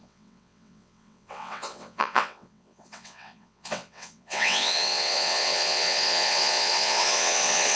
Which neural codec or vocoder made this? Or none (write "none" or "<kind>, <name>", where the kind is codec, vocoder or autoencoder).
vocoder, WaveNeXt